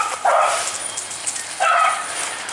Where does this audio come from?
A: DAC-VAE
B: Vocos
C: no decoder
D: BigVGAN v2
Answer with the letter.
C